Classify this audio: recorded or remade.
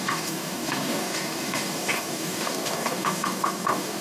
remade